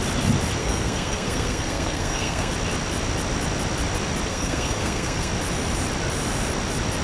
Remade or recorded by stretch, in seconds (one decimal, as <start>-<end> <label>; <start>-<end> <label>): 0.0-0.6 recorded; 0.6-2.5 remade; 2.5-4.3 recorded; 4.3-5.3 remade; 5.3-7.0 recorded